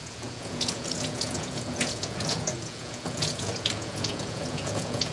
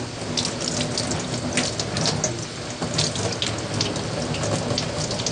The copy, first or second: first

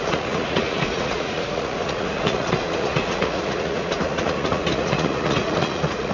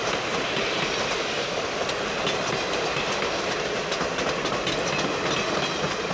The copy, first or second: first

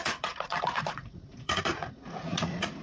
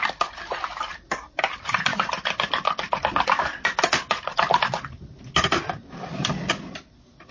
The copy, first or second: first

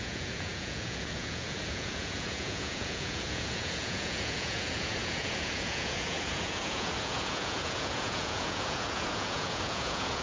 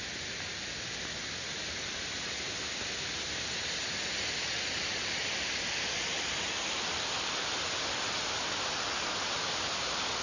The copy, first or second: first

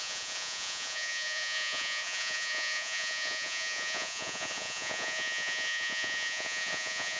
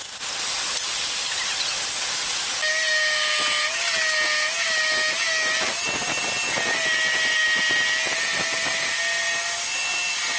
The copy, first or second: first